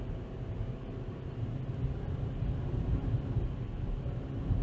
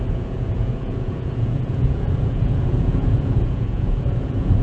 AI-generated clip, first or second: second